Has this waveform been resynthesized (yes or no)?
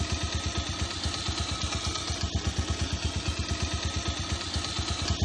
no